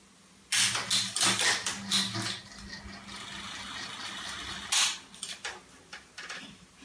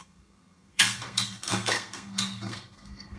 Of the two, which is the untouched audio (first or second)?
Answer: first